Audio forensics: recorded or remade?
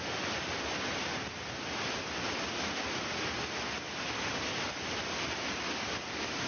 recorded